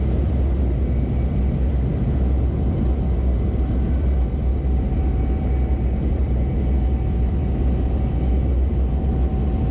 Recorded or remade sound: recorded